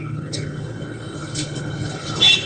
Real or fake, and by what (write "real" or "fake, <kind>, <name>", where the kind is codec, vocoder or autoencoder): fake, codec, HILCodec